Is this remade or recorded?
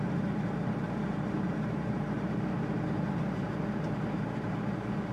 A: remade